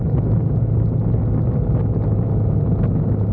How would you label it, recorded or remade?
recorded